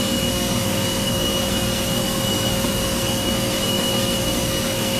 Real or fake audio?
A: fake